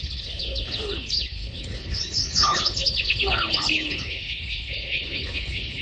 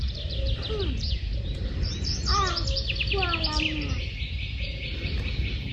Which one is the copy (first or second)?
first